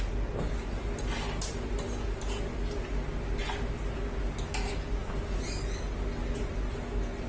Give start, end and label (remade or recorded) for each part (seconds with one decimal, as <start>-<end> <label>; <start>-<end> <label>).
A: 0.0-7.3 recorded